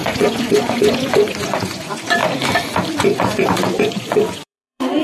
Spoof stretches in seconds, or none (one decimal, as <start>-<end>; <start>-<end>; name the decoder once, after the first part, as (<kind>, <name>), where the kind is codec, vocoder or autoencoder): 0.0-2.2 (vocoder, Vocos); 2.9-5.0